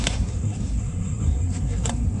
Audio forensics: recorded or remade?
remade